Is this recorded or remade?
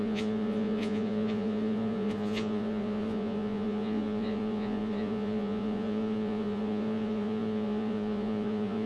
remade